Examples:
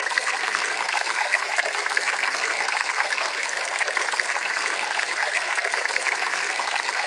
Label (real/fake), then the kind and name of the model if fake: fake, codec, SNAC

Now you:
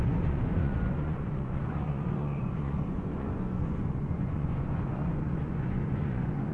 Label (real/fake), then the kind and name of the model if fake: fake, vocoder, Vocos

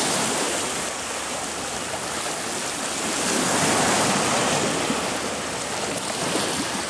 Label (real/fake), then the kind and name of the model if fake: real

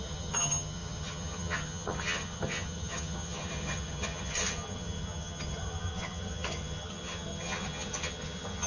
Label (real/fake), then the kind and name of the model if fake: fake, vocoder, HiFi-GAN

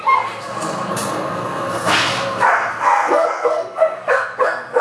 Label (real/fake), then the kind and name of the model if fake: fake, codec, SNAC